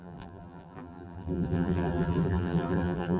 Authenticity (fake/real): fake